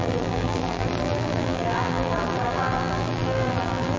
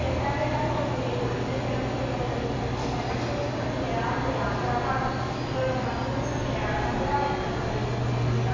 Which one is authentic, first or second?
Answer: second